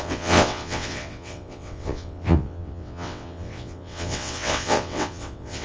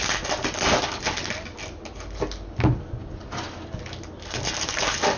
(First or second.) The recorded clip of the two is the second